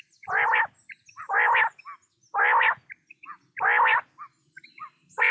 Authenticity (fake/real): real